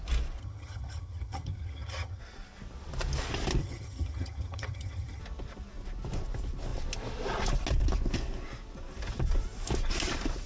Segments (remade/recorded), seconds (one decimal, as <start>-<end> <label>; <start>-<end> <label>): 0.0-0.4 recorded; 0.4-2.2 remade; 2.2-3.6 recorded; 3.6-5.2 remade; 5.2-10.5 recorded

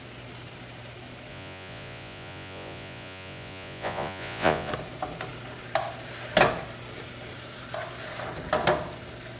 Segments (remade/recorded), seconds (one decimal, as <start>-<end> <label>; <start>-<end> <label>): 0.0-1.3 recorded; 1.3-4.7 remade; 4.7-9.4 recorded

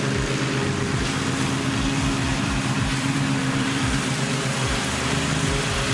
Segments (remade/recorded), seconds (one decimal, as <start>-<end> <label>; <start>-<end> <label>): 0.0-2.3 recorded; 2.3-5.9 remade

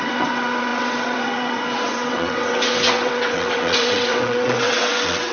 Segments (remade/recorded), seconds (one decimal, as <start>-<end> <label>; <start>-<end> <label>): 0.0-5.3 remade

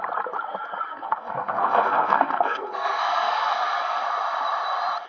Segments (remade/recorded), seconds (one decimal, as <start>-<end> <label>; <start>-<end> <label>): 0.0-0.9 recorded; 0.9-4.0 remade; 4.0-5.1 recorded

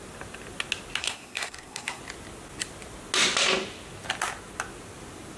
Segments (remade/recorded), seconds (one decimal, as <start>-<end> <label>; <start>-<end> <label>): 0.0-1.0 recorded; 1.0-2.0 remade; 2.0-5.4 recorded

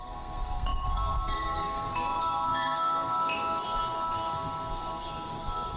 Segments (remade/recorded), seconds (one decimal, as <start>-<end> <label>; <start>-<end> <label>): 0.0-5.8 remade

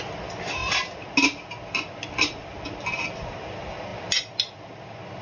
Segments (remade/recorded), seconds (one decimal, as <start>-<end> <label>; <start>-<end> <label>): 0.0-5.2 recorded